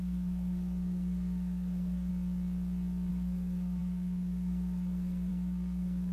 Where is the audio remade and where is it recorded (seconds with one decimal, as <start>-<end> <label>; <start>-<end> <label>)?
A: 0.0-2.1 remade; 2.1-3.1 recorded; 3.1-6.1 remade